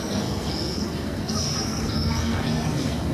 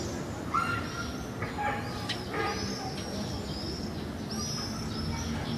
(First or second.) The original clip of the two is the second